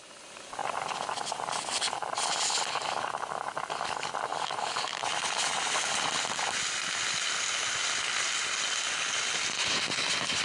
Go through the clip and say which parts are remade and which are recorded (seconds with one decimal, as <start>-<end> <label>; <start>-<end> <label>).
0.0-10.4 recorded